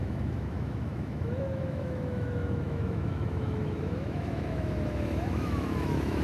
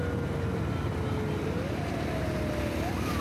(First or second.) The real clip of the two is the second